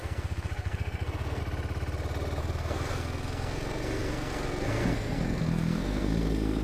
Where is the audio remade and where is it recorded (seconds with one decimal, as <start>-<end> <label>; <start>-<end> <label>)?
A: 0.0-1.4 remade; 1.4-2.4 recorded; 2.4-6.6 remade